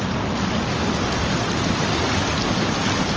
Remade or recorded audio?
recorded